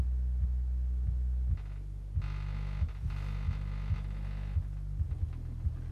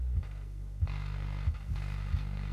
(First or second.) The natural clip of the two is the first